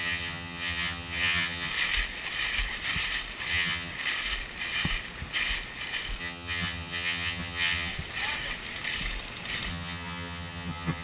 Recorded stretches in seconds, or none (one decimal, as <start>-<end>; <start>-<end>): 1.7-3.5; 3.9-6.2; 7.9-9.7